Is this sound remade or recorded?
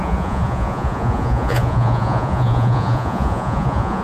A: remade